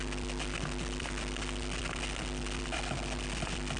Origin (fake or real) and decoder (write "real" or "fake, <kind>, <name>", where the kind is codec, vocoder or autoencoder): real